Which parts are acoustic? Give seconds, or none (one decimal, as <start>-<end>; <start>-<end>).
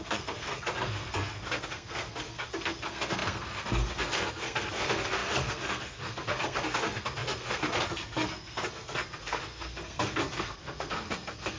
none